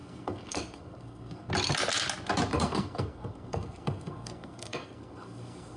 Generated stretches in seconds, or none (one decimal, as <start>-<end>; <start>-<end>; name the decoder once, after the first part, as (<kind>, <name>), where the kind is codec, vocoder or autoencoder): 0.0-1.5 (codec, SNAC); 2.5-5.8